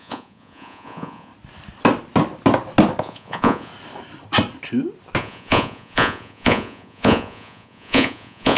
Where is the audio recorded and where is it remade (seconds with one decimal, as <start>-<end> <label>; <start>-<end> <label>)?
0.0-1.3 remade; 1.3-3.0 recorded; 3.0-3.7 remade; 3.7-5.2 recorded; 5.2-8.6 remade